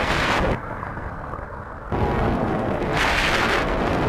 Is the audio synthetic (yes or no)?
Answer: yes